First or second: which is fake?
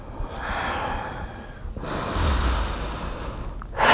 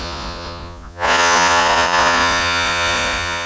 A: second